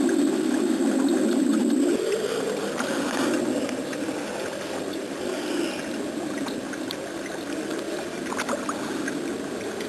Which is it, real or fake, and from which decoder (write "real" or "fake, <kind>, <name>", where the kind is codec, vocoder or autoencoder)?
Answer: real